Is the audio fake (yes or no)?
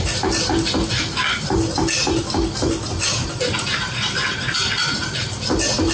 no